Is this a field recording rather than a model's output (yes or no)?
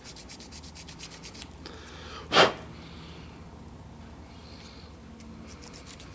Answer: yes